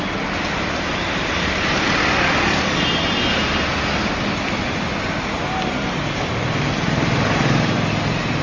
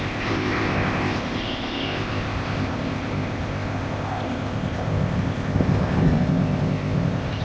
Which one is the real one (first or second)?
first